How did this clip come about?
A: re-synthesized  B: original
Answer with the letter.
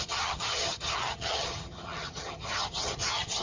A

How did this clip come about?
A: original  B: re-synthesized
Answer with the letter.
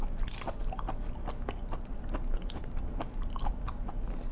A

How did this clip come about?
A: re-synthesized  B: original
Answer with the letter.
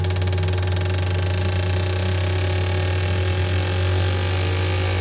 B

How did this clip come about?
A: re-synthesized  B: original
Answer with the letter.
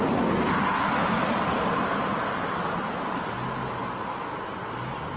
B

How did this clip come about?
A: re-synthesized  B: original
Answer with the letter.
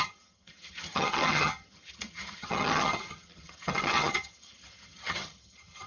A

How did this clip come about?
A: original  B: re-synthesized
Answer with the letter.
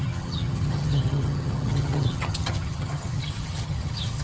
B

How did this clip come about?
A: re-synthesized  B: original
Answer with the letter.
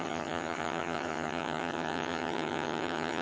A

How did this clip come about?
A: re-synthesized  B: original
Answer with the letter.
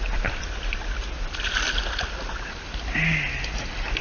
B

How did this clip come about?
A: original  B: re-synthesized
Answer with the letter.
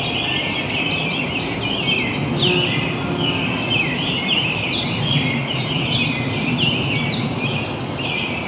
A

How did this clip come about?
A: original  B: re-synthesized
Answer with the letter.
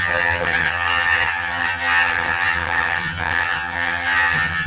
B